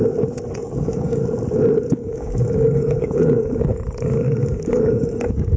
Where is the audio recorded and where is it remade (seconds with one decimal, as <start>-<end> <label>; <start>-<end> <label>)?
0.0-0.6 recorded; 0.6-1.2 remade; 1.2-2.0 recorded; 2.0-5.6 remade